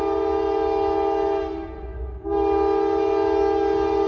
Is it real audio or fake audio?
real